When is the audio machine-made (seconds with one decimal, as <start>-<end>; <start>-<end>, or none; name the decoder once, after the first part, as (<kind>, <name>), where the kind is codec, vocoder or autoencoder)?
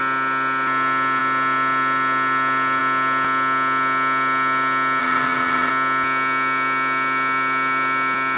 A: 5.0-5.7 (vocoder, HiFi-GAN)